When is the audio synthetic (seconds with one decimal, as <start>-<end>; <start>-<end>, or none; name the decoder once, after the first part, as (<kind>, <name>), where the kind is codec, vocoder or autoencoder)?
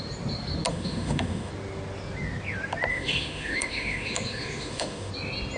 0.7-1.5 (autoencoder, DAC-VAE); 2.9-5.1